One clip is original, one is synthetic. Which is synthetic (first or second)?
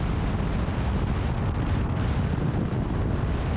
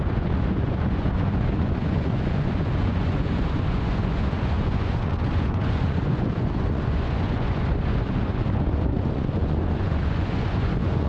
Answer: second